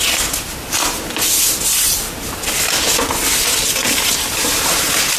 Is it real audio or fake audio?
real